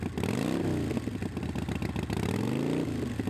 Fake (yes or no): no